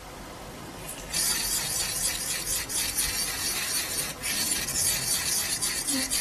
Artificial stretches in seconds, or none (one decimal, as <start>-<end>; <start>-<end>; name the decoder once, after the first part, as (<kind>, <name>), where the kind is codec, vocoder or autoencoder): 3.4-4.6 (vocoder, BigVGAN v2)

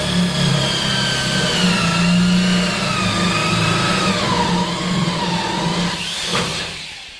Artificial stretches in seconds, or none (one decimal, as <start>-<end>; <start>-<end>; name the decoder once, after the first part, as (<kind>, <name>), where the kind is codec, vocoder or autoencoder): 0.5-1.5 (vocoder, BigVGAN v2); 3.4-4.1; 6.3-6.8

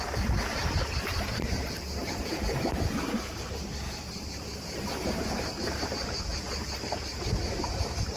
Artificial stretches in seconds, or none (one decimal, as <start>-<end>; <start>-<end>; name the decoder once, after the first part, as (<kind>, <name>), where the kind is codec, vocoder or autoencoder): 0.0-2.0 (vocoder, BigVGAN v2); 3.3-8.2

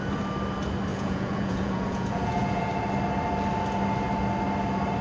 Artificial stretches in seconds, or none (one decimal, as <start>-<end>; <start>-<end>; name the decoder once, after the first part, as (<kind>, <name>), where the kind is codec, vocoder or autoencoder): 0.9-2.6 (vocoder, Vocos)

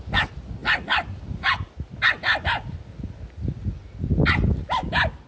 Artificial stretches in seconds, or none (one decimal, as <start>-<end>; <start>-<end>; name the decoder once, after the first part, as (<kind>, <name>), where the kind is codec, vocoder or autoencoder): none

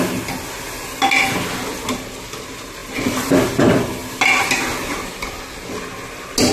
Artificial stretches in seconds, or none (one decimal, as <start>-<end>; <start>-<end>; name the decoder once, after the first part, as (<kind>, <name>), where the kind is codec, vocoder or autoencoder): none

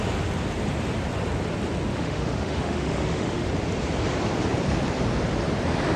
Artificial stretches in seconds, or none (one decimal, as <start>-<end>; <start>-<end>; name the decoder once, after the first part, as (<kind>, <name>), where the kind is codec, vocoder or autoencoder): 1.9-3.5 (autoencoder, DAC-VAE)